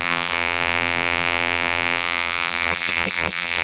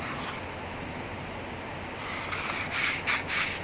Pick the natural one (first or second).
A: second